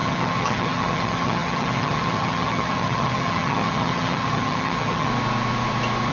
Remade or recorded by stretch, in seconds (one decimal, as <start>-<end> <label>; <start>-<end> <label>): 0.0-5.1 remade; 5.1-6.1 recorded